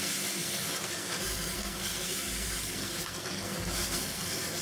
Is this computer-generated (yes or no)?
yes